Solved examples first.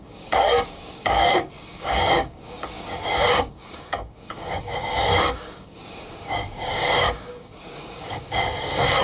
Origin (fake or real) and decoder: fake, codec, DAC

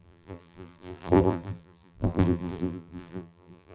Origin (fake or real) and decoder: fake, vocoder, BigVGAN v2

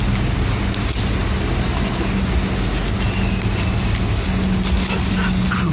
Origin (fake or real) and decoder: real